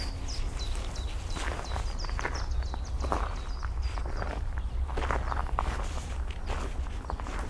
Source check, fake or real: real